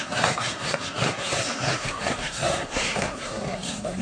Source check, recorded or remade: remade